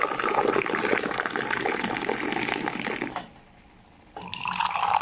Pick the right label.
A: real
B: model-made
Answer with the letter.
A